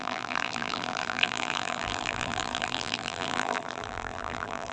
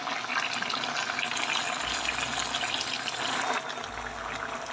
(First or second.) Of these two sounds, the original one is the second